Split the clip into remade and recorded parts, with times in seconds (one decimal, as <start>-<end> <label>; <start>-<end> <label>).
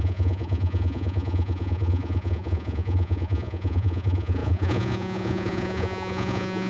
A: 0.0-6.7 remade